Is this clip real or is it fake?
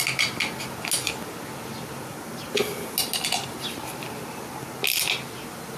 real